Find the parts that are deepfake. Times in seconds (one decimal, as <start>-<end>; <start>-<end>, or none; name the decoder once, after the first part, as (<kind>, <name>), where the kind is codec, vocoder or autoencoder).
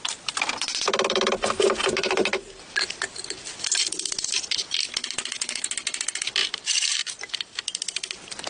6.4-7.1 (vocoder, BigVGAN v2)